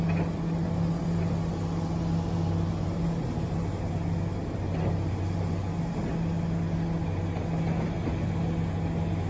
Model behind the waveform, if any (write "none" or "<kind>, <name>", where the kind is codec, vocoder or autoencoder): none